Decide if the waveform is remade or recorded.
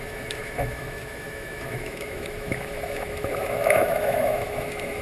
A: remade